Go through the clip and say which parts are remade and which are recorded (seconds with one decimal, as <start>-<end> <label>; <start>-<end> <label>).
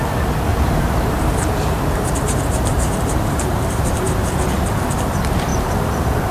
0.0-0.5 recorded; 0.5-4.3 remade; 4.3-5.5 recorded; 5.5-6.3 remade